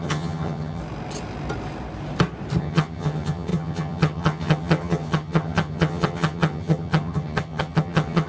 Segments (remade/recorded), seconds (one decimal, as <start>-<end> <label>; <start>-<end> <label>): 0.0-0.8 remade; 0.8-2.6 recorded; 2.6-8.3 remade